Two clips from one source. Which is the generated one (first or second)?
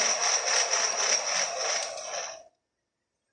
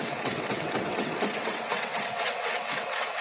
second